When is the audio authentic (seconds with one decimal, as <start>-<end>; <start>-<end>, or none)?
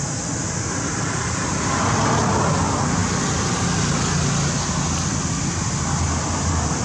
0.0-6.8